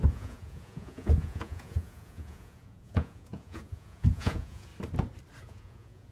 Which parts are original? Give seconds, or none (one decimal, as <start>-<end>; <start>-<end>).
4.7-5.4

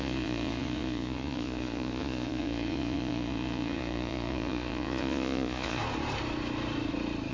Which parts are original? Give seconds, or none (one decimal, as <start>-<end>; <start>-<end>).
5.8-7.3

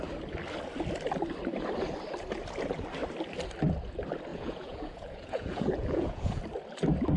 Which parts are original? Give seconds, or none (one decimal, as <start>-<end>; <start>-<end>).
0.0-4.3; 6.4-7.2

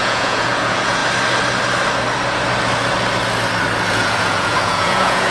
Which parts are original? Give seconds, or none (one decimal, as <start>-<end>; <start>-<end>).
1.0-3.9

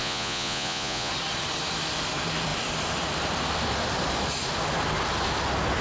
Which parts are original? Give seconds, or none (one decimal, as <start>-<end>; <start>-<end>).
1.1-5.8

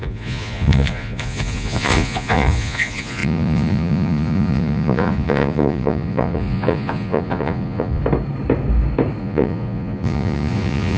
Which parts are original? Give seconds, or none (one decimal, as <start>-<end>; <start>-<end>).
8.0-9.2

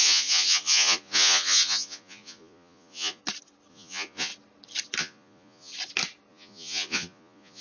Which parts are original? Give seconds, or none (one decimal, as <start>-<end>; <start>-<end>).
3.2-3.7; 4.3-5.0; 5.7-6.3